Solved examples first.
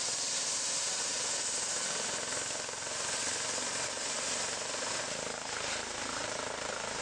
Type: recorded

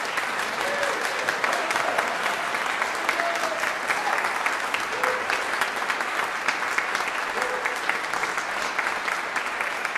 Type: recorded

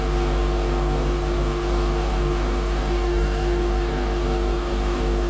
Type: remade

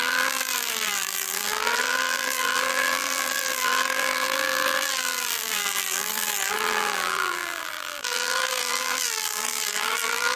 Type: remade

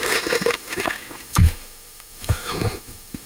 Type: remade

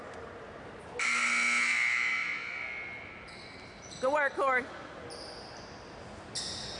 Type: recorded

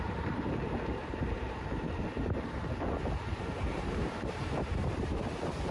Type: remade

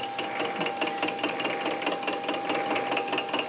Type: recorded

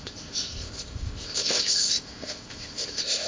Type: remade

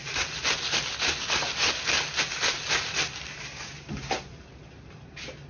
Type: recorded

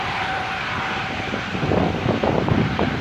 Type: recorded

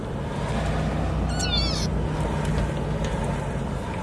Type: recorded